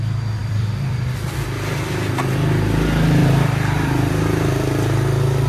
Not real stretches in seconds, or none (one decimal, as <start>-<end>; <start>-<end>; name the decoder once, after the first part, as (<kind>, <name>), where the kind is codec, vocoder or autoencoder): 0.4-2.1 (vocoder, BigVGAN v2); 3.2-4.1